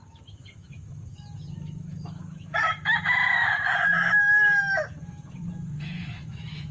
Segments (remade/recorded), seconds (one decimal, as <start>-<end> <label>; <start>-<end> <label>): 0.0-6.7 remade